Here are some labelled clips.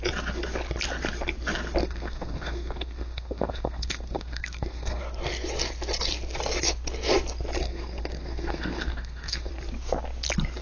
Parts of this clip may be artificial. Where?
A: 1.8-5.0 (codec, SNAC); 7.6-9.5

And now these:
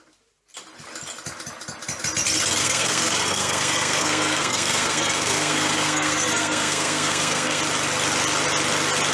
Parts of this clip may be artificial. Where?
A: 2.6-7.6 (codec, SNAC)

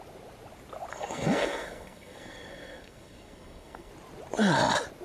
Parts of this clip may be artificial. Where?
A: 0.9-3.9 (codec, SNAC)

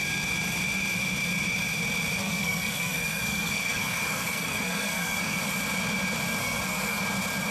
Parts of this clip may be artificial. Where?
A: 2.2-5.4 (codec, SNAC); 6.4-7.0

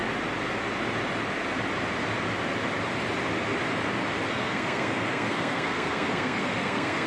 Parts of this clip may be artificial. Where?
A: 4.3-7.1 (codec, SNAC)

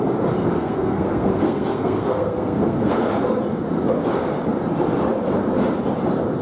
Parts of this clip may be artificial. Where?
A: 0.6-3.0 (codec, SNAC)

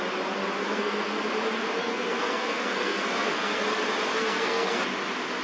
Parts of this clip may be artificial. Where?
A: 0.6-1.2 (codec, SNAC); 1.8-3.6; 4.1-4.8